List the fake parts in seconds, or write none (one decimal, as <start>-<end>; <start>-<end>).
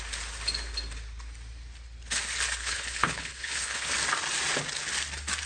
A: 2.6-3.9